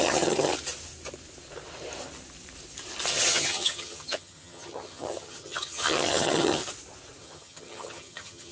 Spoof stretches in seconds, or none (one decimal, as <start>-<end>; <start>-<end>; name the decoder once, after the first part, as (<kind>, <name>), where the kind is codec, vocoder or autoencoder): 0.0-0.5 (vocoder, HiFi-GAN); 3.1-6.6; 7.2-8.5